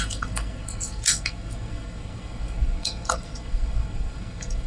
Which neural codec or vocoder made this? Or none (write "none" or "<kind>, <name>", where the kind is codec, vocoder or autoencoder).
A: codec, SNAC